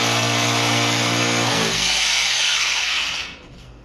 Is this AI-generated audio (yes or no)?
yes